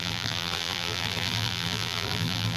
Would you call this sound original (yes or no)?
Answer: no